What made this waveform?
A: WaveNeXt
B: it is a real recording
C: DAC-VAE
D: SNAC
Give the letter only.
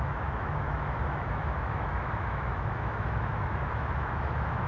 C